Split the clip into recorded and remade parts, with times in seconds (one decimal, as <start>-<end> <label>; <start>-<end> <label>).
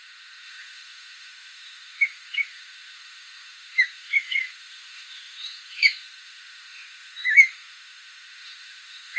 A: 0.0-9.2 remade